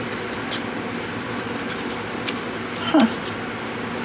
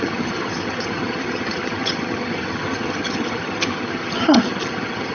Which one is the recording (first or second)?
first